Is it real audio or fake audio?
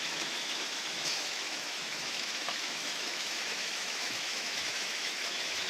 fake